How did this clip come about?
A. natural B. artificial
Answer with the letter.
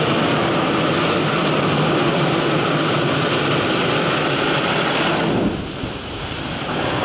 A